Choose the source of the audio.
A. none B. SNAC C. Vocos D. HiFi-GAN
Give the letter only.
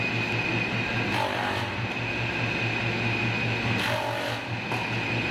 A